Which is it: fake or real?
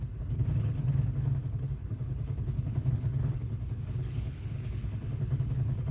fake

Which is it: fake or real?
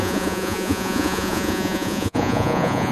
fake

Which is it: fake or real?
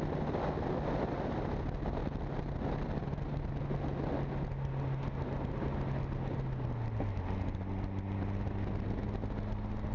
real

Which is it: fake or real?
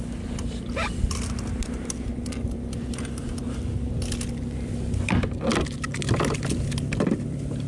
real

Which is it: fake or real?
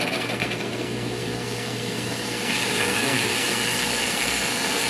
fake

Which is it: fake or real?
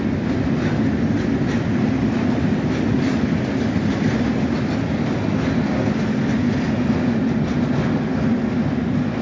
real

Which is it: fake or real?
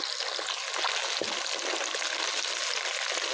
real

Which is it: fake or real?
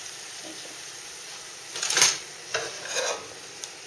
fake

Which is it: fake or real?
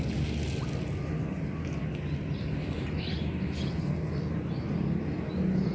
real